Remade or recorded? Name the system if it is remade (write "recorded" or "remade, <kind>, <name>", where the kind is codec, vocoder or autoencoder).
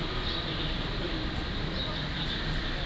remade, vocoder, BigVGAN v2